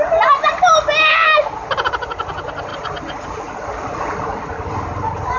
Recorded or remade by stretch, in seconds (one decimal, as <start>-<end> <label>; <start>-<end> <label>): 0.0-5.4 recorded